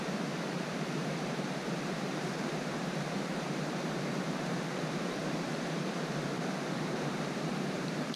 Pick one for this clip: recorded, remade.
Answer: remade